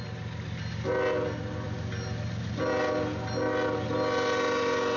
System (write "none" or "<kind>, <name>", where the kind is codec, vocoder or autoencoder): none